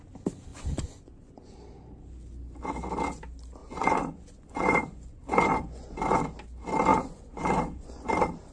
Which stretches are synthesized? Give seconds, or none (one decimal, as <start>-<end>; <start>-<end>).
0.5-1.5; 3.6-6.2; 6.9-8.1

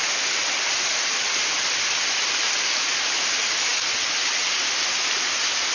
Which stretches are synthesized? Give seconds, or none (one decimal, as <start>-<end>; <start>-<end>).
none

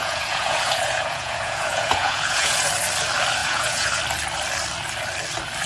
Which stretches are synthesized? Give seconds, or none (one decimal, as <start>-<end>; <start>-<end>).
0.0-2.7; 3.4-4.0